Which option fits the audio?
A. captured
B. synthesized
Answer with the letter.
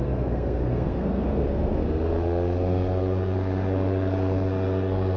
B